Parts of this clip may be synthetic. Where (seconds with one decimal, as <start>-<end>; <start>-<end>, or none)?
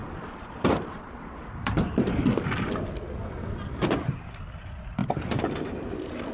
0.0-2.0